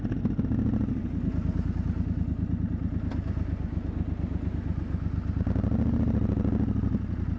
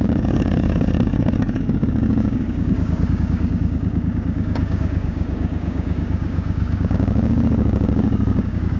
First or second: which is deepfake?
second